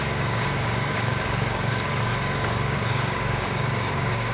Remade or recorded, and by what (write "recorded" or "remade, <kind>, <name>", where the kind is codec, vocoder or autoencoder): remade, codec, DAC